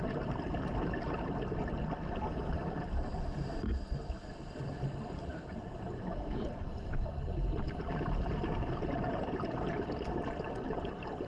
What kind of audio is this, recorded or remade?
recorded